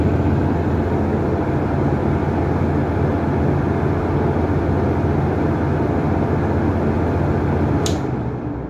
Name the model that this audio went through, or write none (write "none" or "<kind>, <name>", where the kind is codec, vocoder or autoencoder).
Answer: none